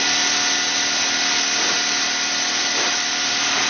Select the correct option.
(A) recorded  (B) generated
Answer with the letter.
A